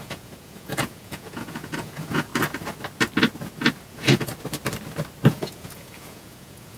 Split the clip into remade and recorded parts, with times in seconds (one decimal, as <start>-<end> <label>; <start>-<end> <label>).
0.0-2.3 remade; 2.3-3.8 recorded; 3.8-4.3 remade; 4.3-5.3 recorded; 5.3-6.8 remade